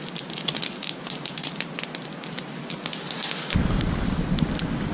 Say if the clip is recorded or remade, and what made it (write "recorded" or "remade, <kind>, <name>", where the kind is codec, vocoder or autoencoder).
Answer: recorded